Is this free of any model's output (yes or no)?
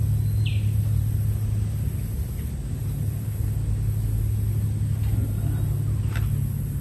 yes